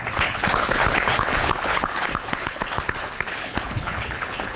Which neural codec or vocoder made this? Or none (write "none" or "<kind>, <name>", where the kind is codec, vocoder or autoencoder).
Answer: codec, HILCodec